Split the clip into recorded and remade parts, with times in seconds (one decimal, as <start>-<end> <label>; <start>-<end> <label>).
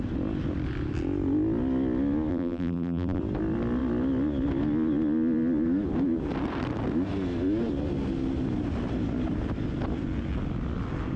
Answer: 0.0-2.3 recorded; 2.3-3.2 remade; 3.2-11.2 recorded